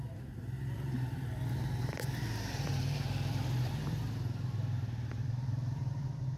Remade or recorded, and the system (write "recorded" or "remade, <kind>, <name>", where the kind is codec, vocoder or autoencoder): remade, vocoder, BigVGAN v2